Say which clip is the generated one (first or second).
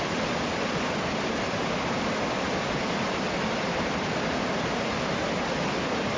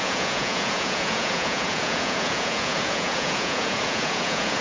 second